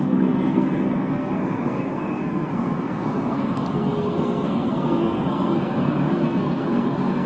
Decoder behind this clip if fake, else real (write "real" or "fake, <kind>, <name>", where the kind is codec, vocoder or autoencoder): fake, codec, SNAC